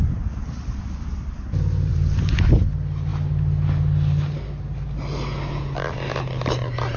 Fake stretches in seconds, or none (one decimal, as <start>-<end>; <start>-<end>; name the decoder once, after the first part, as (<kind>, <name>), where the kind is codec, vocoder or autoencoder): 1.9-2.6 (vocoder, BigVGAN v2)